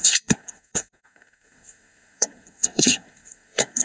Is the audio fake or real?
fake